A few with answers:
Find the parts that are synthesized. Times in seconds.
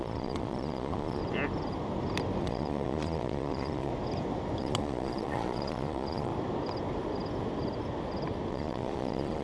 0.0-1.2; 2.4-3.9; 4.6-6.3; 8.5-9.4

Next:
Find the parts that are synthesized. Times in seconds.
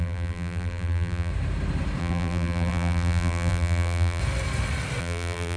0.0-1.3; 2.0-4.2; 5.0-5.6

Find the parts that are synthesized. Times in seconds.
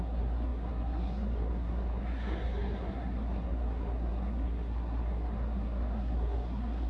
0.0-6.9